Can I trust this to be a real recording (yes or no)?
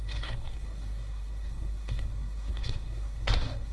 no